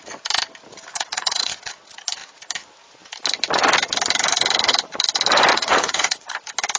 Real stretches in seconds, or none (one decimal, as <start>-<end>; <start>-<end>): 0.0-0.9; 1.5-5.5; 6.3-6.8